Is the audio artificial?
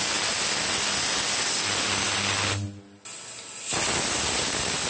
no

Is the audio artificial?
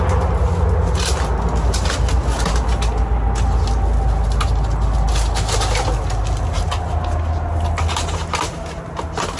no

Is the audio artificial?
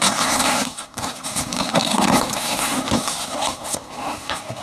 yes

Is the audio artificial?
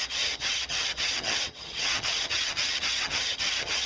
yes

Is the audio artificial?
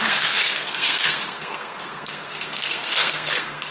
yes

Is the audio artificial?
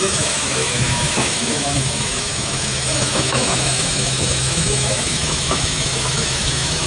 yes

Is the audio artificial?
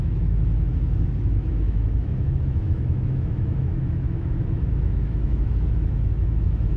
yes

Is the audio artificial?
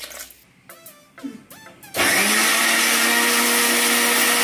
no